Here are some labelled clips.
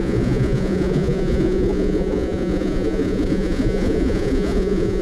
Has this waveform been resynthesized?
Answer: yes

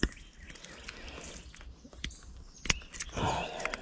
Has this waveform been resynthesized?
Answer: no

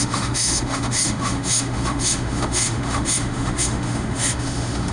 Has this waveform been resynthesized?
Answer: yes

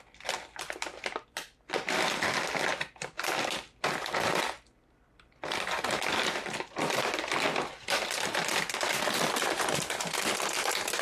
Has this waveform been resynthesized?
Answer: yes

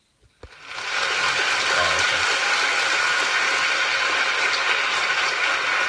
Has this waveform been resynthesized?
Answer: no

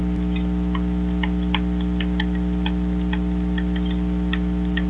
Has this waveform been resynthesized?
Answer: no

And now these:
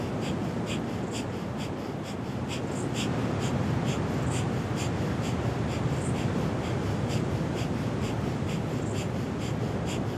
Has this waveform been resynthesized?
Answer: no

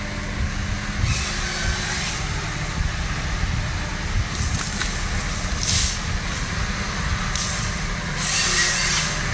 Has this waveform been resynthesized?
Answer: no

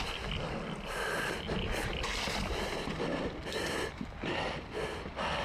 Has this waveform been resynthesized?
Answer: no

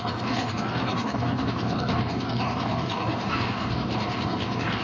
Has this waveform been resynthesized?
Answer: yes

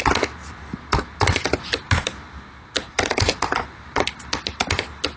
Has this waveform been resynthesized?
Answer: no